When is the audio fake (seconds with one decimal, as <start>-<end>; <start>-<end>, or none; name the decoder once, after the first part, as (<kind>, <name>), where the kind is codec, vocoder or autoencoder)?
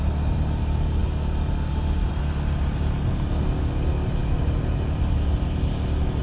none